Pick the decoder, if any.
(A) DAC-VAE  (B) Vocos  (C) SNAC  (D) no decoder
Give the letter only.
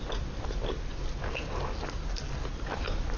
D